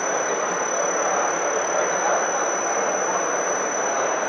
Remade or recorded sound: recorded